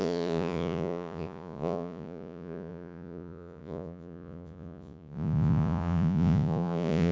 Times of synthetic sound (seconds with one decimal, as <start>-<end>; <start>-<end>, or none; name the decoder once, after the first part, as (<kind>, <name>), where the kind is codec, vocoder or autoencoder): 0.0-7.1 (vocoder, Vocos)